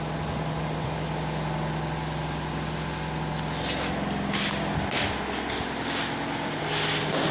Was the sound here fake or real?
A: real